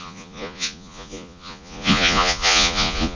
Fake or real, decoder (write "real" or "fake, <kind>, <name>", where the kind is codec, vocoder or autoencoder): fake, vocoder, Vocos